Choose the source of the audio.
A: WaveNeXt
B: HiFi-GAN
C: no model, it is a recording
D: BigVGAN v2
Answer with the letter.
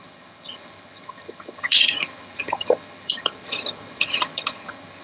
B